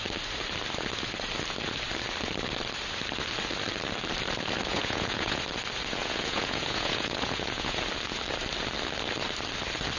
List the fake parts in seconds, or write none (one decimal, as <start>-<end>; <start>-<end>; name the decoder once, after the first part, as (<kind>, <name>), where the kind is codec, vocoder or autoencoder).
4.7-5.4 (vocoder, Vocos); 6.0-7.8